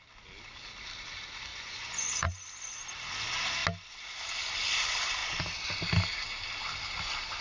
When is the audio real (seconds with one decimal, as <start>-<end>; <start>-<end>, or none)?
0.0-1.5; 2.3-7.4